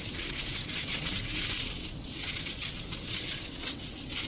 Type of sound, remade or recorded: remade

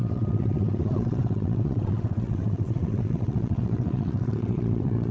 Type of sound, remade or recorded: remade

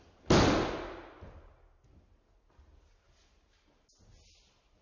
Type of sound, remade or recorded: recorded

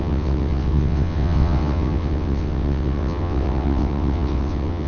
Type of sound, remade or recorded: remade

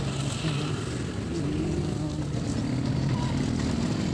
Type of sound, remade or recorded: recorded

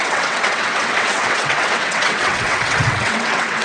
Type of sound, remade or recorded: remade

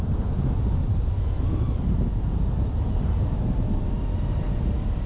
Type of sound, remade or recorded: recorded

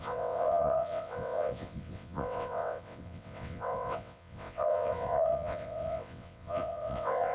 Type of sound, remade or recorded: remade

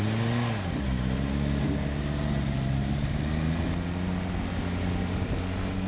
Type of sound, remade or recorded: recorded